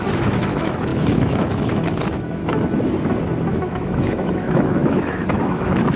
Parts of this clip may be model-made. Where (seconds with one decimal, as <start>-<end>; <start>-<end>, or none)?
0.0-2.4; 3.5-6.0